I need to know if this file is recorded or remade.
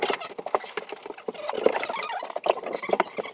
recorded